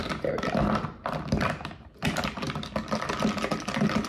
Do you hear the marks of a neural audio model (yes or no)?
no